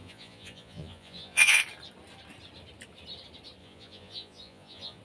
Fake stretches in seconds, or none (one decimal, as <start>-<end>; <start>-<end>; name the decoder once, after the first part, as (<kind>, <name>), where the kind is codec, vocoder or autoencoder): 0.0-1.6 (vocoder, Vocos); 3.6-5.0